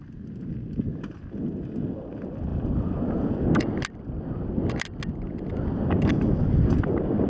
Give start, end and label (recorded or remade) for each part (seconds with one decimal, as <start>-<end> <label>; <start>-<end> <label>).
0.0-7.3 recorded